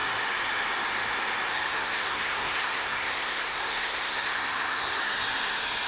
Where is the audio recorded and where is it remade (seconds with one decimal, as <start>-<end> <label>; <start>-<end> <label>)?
0.0-1.5 recorded; 1.5-5.0 remade; 5.0-5.9 recorded

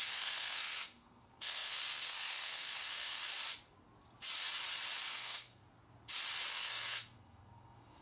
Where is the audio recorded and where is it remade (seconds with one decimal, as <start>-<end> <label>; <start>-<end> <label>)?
0.0-3.3 remade; 3.3-5.1 recorded; 5.1-5.6 remade; 5.6-6.5 recorded; 6.5-8.0 remade